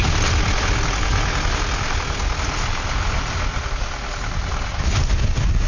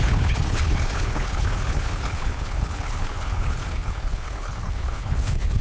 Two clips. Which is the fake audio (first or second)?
second